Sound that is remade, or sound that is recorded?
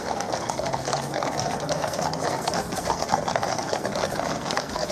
remade